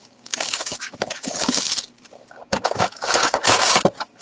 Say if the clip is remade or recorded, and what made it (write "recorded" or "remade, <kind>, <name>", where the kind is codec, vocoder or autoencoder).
remade, codec, DAC